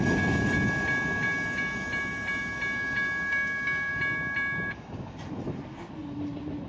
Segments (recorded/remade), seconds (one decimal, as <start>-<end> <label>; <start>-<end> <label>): 0.0-3.3 recorded; 3.3-3.9 remade; 3.9-6.7 recorded